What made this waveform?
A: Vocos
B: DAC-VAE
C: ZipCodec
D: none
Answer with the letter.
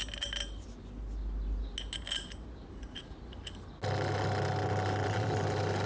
D